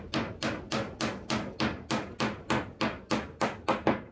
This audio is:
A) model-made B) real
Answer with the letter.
B